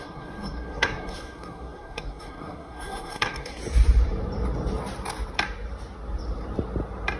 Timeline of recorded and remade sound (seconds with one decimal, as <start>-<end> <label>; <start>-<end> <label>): 0.0-3.6 remade; 3.6-7.2 recorded